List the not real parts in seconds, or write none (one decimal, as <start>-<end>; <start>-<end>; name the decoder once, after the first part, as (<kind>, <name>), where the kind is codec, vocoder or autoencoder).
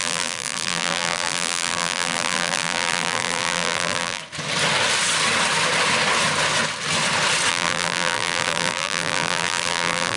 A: 0.0-4.2 (vocoder, BigVGAN v2); 7.5-10.2